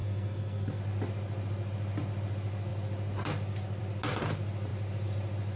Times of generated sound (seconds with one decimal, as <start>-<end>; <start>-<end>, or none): 0.0-0.8